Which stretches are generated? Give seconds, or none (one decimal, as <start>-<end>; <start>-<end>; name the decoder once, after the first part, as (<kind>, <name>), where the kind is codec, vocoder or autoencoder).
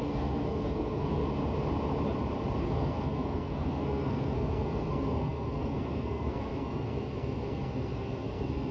0.0-1.2 (codec, SNAC); 2.6-8.7